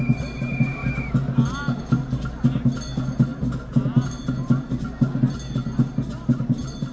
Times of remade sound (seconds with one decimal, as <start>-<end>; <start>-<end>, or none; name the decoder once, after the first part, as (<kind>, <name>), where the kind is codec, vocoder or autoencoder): none

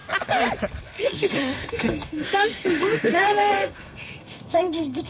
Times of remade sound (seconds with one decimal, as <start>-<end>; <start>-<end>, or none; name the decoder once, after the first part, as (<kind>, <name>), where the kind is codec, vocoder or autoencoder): 0.8-5.1 (codec, SNAC)

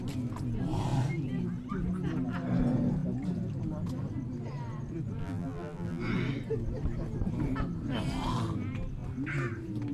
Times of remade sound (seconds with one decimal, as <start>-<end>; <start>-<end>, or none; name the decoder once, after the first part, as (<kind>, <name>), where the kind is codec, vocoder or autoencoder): 5.2-6.0 (vocoder, BigVGAN v2)

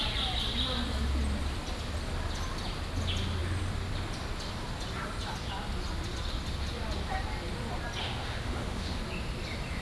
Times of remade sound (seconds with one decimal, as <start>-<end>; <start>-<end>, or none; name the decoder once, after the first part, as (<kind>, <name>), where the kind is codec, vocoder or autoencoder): 8.0-9.0 (autoencoder, DAC-VAE)

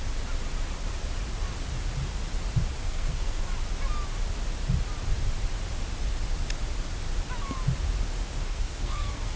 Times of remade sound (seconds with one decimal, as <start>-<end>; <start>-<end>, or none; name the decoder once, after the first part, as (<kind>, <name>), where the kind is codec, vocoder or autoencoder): 2.8-3.4 (codec, SNAC); 8.5-9.4